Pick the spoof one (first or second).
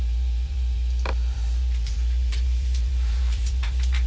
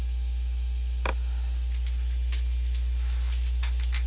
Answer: first